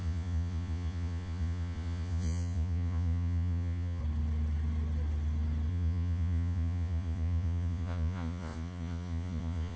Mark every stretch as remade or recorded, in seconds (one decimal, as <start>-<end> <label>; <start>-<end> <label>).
0.0-4.0 remade; 4.0-5.7 recorded; 5.7-9.8 remade